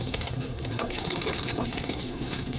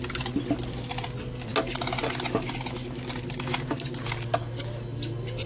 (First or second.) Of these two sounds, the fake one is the first